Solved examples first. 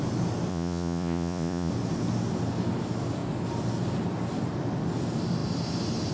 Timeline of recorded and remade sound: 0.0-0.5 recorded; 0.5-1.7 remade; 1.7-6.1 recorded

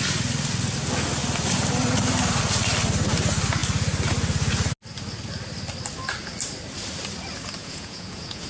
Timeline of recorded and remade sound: 0.0-7.6 recorded; 7.6-8.5 remade